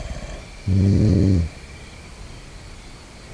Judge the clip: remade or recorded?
recorded